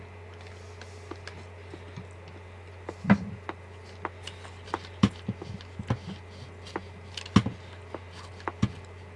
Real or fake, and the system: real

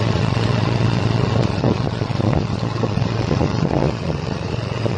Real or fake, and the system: fake, vocoder, Vocos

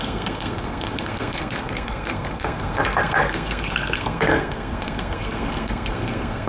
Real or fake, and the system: fake, codec, SNAC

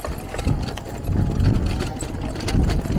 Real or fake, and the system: real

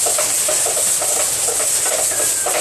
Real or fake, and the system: real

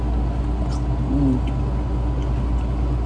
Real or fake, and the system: real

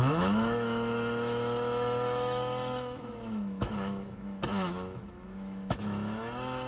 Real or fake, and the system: fake, autoencoder, DAC-VAE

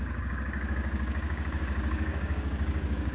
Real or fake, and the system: fake, codec, DAC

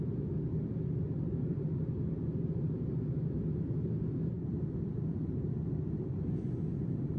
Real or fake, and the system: real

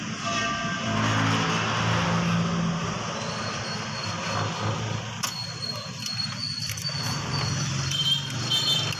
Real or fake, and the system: real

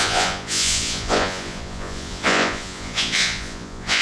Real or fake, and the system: fake, vocoder, Vocos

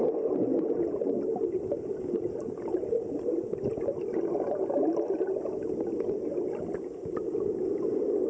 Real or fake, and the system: real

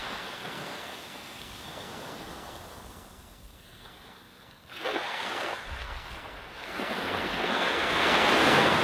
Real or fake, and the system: fake, codec, SNAC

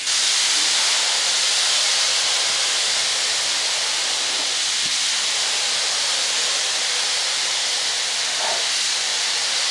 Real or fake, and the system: real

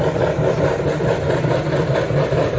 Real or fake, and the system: real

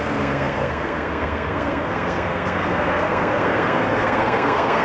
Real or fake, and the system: fake, codec, SNAC